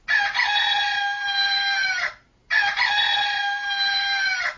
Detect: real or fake real